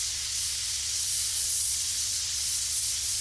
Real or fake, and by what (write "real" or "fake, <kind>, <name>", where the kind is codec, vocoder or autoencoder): fake, vocoder, Vocos